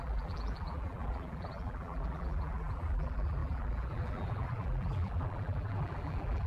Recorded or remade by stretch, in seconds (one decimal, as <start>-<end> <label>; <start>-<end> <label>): 0.0-6.5 remade